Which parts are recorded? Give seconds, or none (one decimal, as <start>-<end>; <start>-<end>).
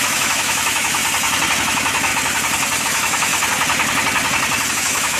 1.0-1.6; 2.1-2.8; 3.3-4.7